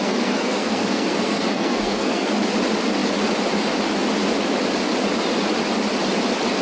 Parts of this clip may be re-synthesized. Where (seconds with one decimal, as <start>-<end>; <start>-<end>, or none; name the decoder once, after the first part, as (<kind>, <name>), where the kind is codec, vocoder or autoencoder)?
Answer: 0.0-2.4 (codec, SNAC)